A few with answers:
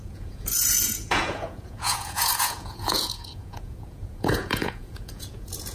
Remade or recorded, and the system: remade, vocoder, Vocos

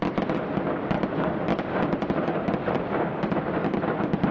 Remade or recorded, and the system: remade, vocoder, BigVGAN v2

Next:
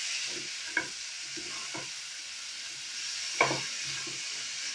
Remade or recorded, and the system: recorded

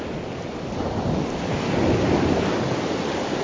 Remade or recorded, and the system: recorded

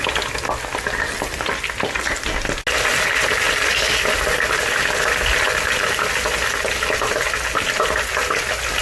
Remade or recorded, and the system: recorded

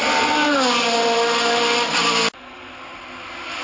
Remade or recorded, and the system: recorded